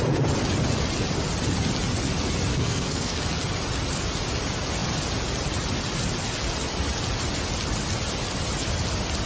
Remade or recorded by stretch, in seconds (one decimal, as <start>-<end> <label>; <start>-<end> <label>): 0.0-2.5 recorded; 2.5-3.2 remade; 3.2-9.3 recorded